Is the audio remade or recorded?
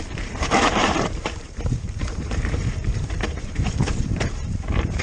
remade